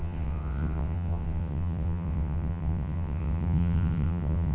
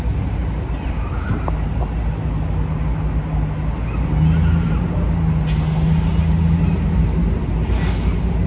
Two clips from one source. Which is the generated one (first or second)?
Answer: first